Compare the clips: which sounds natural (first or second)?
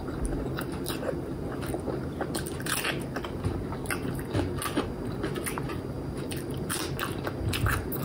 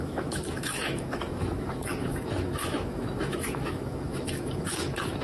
first